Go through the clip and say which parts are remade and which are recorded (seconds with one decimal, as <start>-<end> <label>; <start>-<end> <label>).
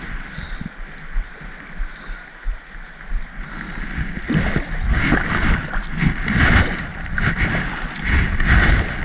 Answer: 0.0-9.0 recorded